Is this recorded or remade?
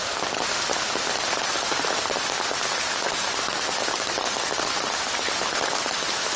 recorded